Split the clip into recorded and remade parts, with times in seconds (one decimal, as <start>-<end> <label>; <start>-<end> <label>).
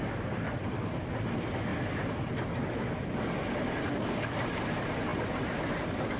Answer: 0.0-6.2 recorded